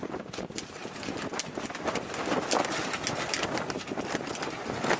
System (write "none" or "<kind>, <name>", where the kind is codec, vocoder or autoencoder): none